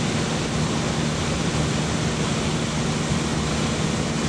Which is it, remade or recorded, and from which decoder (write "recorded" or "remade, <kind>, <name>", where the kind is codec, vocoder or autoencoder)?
recorded